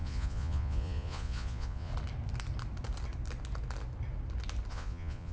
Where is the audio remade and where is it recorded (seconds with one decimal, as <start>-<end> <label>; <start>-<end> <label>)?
0.0-1.9 remade; 1.9-4.7 recorded; 4.7-5.3 remade